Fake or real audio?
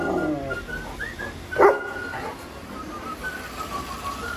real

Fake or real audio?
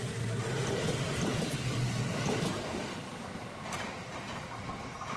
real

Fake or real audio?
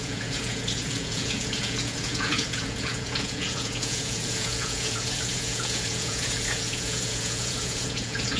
fake